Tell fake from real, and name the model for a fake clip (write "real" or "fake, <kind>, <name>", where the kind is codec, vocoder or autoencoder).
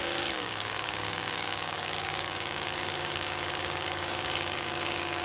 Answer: fake, codec, DAC